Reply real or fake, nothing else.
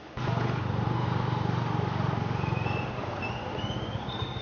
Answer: real